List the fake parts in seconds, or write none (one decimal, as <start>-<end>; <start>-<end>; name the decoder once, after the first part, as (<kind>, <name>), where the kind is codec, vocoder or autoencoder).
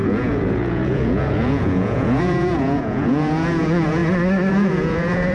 0.0-4.0 (vocoder, Vocos); 4.5-5.3